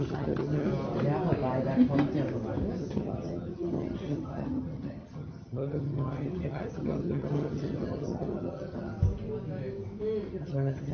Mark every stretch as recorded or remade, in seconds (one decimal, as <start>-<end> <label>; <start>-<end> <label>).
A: 0.0-0.7 remade; 0.7-2.8 recorded; 2.8-8.9 remade; 8.9-10.3 recorded; 10.3-10.9 remade